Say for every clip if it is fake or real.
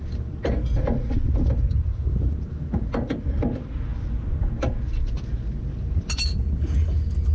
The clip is real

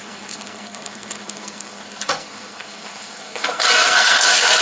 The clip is fake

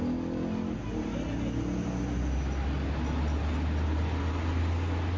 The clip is real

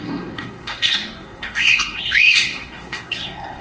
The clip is fake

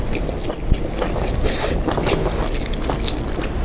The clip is real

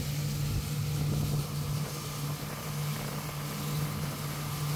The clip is real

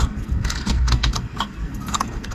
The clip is fake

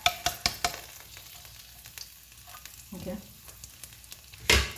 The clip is real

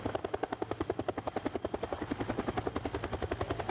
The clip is real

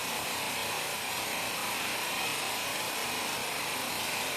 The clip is fake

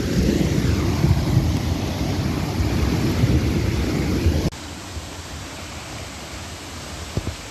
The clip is real